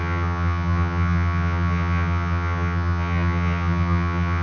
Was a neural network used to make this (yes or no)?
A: yes